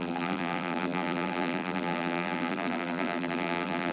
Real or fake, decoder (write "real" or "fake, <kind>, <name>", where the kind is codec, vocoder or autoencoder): fake, vocoder, BigVGAN v2